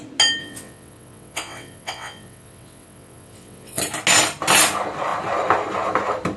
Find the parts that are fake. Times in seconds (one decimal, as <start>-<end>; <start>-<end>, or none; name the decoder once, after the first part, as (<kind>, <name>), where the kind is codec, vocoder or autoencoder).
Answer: 0.4-3.8 (vocoder, WaveNeXt)